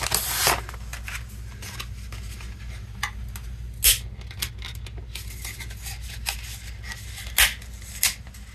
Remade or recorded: recorded